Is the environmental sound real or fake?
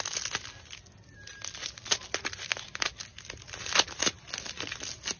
real